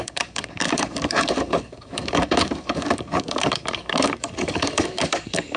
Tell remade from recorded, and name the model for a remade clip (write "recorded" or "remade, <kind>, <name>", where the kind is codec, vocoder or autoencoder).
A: remade, codec, DAC